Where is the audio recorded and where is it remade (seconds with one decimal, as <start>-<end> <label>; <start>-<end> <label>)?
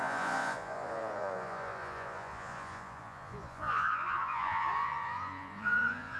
0.0-6.2 remade